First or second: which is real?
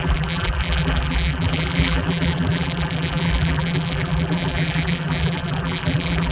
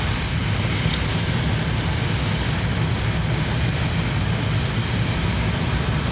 second